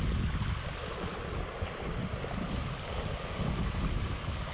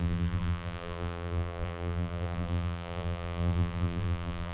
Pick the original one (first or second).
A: first